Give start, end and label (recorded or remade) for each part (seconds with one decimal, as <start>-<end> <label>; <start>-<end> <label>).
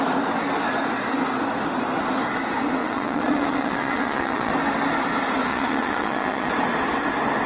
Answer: 0.0-2.8 recorded; 2.8-4.5 remade; 4.5-5.5 recorded; 5.5-6.5 remade; 6.5-7.5 recorded